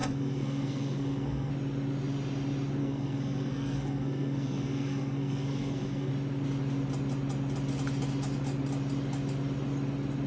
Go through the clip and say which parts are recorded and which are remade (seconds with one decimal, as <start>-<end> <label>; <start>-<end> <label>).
0.0-1.5 remade; 1.5-2.8 recorded; 2.8-6.1 remade; 6.1-10.3 recorded